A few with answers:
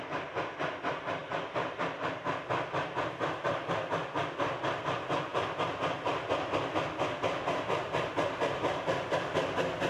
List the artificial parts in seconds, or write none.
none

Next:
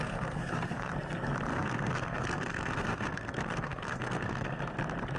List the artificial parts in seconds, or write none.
0.0-0.9 (codec, SNAC); 1.5-4.6

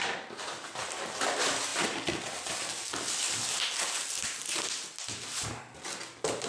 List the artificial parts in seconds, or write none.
none

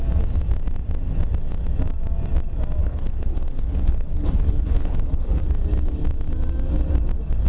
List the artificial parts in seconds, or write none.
2.8-5.4 (codec, HILCodec)